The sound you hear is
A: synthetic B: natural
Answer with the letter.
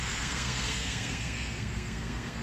A